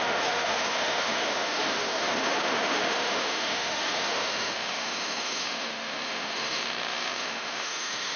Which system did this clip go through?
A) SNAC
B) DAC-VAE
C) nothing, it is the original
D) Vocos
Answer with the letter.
B